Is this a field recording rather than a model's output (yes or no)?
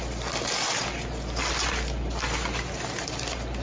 yes